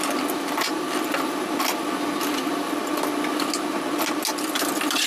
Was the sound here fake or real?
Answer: real